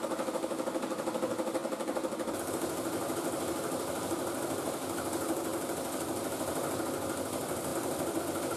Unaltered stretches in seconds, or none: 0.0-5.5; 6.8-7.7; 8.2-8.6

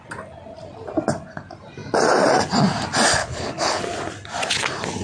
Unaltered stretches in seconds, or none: 0.0-3.2; 3.8-5.0